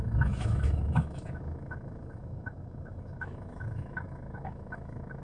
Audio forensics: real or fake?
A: fake